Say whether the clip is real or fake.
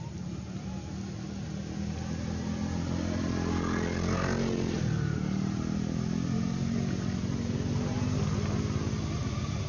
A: real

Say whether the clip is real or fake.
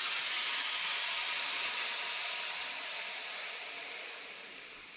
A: real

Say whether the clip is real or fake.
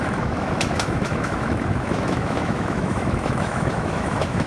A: fake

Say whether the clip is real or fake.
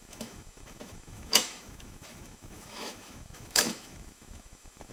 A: fake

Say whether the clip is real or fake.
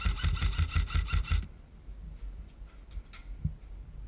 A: real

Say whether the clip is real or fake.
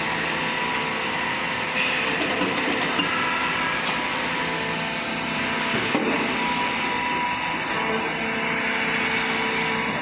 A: real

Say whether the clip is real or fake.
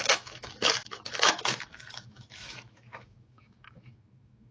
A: fake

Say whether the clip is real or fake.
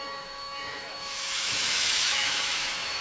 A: fake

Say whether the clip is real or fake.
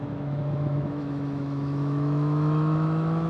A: fake